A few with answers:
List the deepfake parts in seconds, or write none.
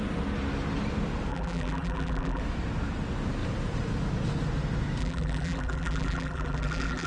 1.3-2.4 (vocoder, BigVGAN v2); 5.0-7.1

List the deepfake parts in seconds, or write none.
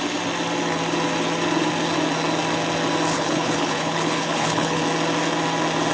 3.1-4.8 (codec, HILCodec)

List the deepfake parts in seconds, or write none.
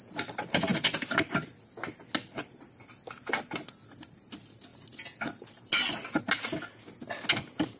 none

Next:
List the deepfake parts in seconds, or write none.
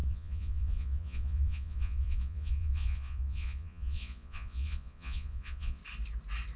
0.0-5.8 (vocoder, Vocos)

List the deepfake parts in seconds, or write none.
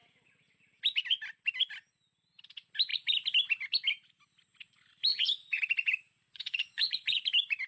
5.1-5.6 (vocoder, Vocos); 6.3-7.2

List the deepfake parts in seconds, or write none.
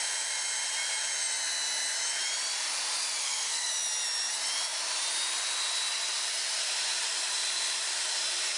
3.2-3.7 (codec, SNAC)